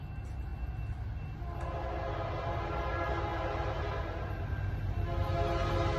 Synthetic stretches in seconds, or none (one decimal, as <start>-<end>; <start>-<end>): none